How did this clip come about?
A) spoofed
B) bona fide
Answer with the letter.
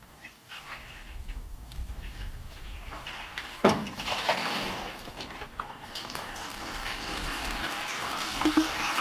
A